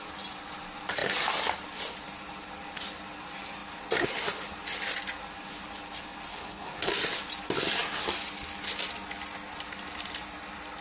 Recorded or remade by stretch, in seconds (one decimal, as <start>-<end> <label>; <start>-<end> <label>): 0.0-6.3 recorded; 6.3-6.9 remade; 6.9-10.8 recorded